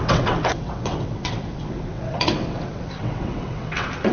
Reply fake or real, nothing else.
fake